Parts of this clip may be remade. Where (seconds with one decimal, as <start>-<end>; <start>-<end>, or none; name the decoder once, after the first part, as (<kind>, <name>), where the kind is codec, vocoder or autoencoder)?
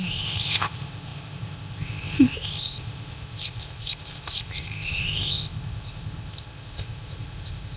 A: 0.0-7.8 (codec, ZipCodec)